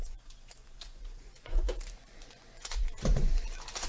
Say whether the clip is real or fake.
fake